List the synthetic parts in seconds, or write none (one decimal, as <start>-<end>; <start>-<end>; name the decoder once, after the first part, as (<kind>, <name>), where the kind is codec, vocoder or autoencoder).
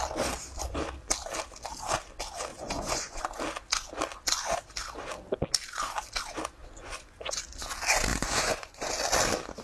2.5-3.2 (vocoder, Vocos); 6.6-7.4; 8.1-8.9